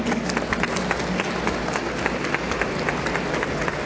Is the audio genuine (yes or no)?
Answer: yes